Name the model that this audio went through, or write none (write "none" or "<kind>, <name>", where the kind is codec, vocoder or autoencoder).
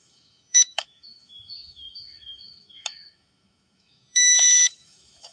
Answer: autoencoder, DAC-VAE